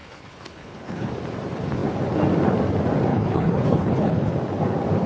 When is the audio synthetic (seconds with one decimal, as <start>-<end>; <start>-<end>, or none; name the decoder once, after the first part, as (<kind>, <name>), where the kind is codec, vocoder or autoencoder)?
0.0-1.1 (codec, HILCodec); 3.1-4.3